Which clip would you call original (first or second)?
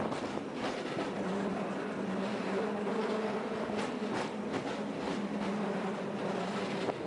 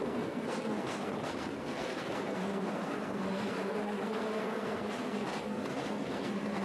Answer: first